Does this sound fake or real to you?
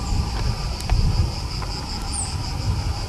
real